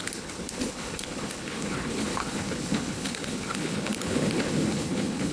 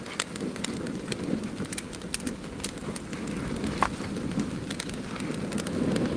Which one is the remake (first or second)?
first